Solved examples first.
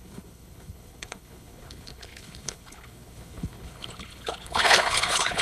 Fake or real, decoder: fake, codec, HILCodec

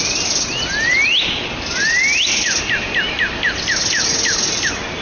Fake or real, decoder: real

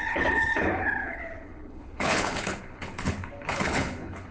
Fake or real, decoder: fake, codec, HILCodec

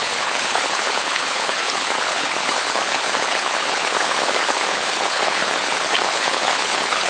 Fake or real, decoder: fake, codec, HILCodec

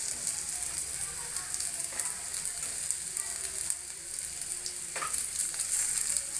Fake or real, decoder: real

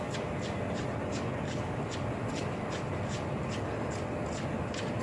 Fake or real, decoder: real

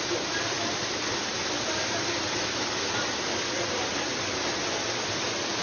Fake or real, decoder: real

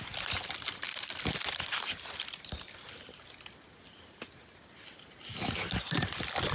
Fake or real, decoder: real